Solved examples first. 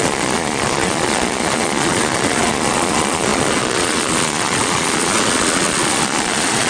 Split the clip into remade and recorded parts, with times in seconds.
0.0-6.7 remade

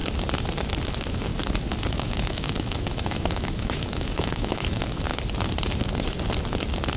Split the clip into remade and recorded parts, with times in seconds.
0.0-0.9 recorded; 0.9-1.3 remade; 1.3-1.9 recorded; 1.9-5.1 remade; 5.1-7.0 recorded

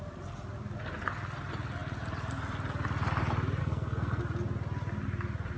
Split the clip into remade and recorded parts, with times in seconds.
0.0-3.6 recorded; 3.6-4.2 remade; 4.2-5.6 recorded

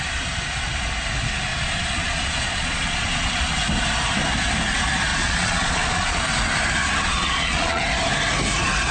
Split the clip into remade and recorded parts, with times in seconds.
0.0-1.5 recorded; 1.5-3.4 remade; 3.4-5.1 recorded; 5.1-6.2 remade; 6.2-7.0 recorded; 7.0-7.8 remade; 7.8-8.9 recorded

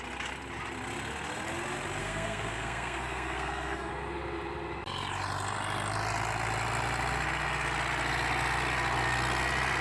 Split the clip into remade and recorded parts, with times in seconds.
0.0-2.0 recorded; 2.0-3.9 remade; 3.9-9.8 recorded

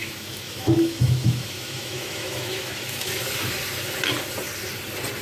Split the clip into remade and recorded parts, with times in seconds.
0.0-3.1 remade; 3.1-5.2 recorded

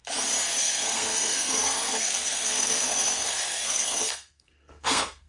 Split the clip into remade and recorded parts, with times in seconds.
0.0-0.6 recorded; 0.6-5.3 remade

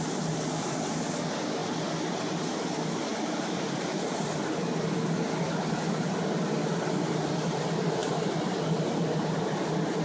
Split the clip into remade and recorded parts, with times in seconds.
0.0-10.0 recorded